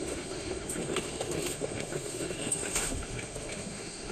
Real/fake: fake